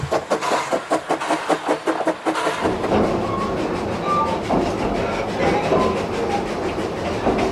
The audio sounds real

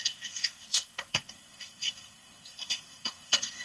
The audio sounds fake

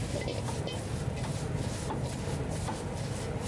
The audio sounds real